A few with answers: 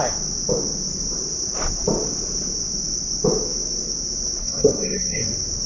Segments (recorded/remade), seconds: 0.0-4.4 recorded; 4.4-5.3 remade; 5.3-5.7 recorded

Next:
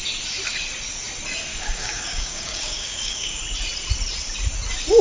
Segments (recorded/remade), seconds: 0.0-1.5 recorded; 1.5-3.4 remade; 3.4-5.0 recorded